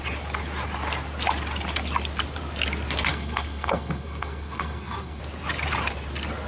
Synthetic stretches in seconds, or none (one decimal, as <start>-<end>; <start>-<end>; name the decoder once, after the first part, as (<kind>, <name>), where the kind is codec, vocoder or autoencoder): 3.1-5.2 (codec, SNAC)